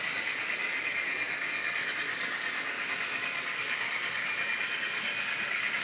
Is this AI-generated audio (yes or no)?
yes